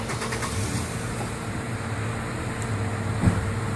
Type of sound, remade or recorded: recorded